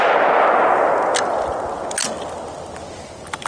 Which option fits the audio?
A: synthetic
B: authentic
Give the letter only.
B